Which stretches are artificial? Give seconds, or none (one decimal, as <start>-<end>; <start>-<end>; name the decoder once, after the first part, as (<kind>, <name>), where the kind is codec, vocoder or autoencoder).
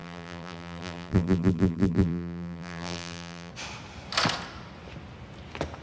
0.0-3.5 (vocoder, BigVGAN v2)